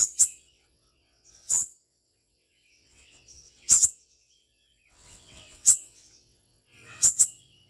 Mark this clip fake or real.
fake